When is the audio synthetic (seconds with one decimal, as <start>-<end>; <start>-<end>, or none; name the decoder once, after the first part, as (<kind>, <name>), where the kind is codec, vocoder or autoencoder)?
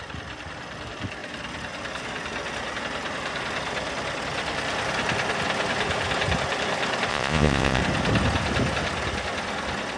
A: 7.1-7.8 (vocoder, Vocos)